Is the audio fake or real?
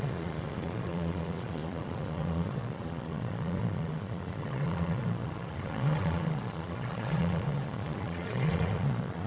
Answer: fake